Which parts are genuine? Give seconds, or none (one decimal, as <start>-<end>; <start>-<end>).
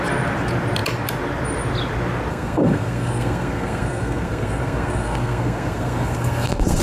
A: 0.0-2.3